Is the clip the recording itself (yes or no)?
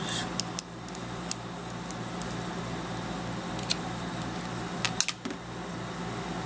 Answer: yes